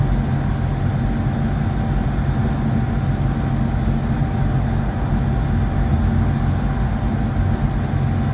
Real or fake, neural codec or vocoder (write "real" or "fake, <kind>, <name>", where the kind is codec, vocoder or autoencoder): real